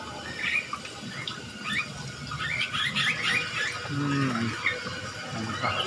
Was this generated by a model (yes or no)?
no